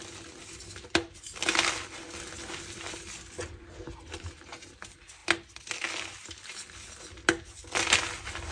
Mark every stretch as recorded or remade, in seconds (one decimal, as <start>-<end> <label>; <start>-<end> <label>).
0.0-8.5 recorded